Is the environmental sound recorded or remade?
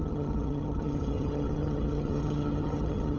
remade